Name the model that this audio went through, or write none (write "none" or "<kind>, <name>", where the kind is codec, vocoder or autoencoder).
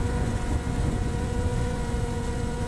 vocoder, Vocos